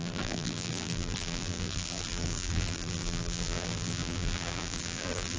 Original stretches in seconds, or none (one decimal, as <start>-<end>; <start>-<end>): none